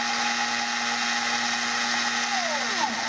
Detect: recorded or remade recorded